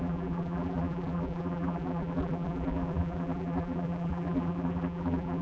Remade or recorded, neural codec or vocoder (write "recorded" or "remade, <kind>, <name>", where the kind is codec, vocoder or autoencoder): remade, vocoder, BigVGAN v2